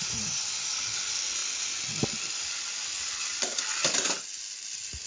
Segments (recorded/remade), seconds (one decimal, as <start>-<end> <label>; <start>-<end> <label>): 0.0-5.1 recorded